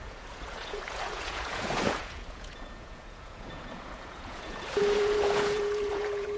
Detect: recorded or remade remade